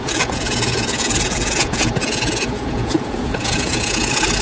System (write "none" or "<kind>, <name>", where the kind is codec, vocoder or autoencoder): vocoder, Vocos